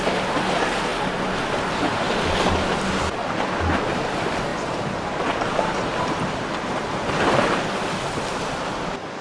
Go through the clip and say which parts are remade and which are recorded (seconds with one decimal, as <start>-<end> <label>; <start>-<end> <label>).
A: 0.0-9.2 recorded